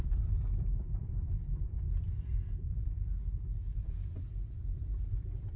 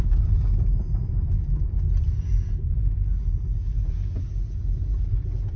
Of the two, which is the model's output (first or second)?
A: first